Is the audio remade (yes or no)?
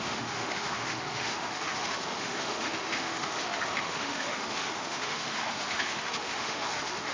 yes